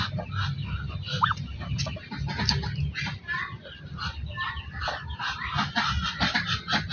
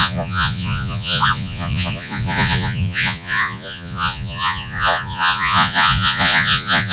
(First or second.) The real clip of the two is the first